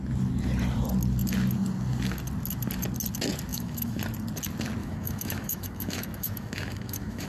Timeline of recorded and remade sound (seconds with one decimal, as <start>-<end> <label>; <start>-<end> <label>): 0.0-3.5 recorded; 3.5-4.0 remade; 4.0-4.8 recorded; 4.8-7.3 remade